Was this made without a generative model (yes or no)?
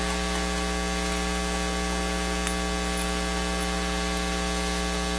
yes